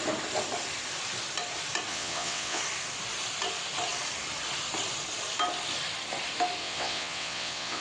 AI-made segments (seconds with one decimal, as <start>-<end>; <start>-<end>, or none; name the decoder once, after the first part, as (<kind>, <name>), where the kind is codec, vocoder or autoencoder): 1.9-2.6 (vocoder, WaveNeXt); 6.6-7.8